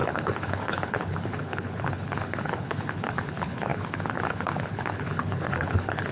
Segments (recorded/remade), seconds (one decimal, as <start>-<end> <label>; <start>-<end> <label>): 0.0-6.1 remade